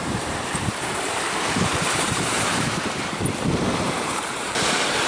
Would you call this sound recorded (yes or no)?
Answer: no